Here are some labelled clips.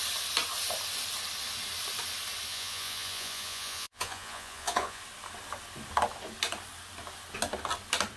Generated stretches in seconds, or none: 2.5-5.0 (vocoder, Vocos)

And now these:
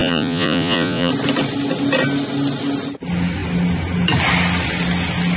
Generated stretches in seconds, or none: 0.0-1.1 (vocoder, Vocos)

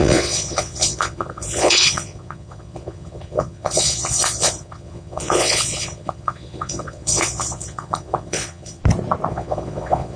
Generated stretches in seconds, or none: 0.0-8.8 (vocoder, Vocos); 9.3-10.2

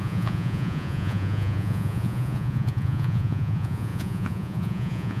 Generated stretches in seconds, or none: 0.0-5.2 (vocoder, Vocos)

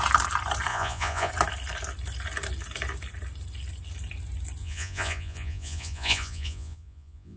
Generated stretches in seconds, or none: 0.7-1.3 (vocoder, Vocos); 4.6-7.4

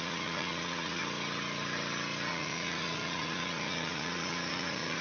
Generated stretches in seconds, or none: 0.0-1.0 (vocoder, Vocos); 2.3-5.0